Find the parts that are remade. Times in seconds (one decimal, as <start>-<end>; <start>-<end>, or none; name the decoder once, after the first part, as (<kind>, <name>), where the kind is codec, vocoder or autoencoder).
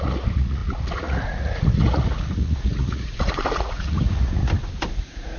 0.0-4.4 (vocoder, Vocos); 5.0-5.4